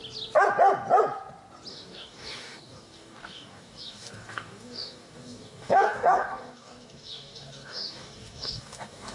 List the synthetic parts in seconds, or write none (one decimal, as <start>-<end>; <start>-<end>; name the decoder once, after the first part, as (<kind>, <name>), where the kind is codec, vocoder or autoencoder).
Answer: 1.7-9.1 (codec, DAC)